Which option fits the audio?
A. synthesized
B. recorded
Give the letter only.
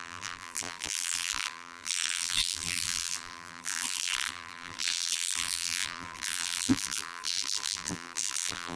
A